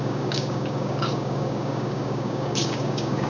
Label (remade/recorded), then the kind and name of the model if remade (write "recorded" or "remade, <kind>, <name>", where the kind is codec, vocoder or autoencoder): remade, codec, DAC